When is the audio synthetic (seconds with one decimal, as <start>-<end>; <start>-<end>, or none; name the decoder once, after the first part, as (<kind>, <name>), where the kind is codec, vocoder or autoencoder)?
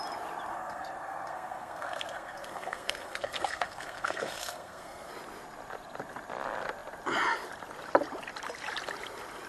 0.5-5.1 (codec, SNAC)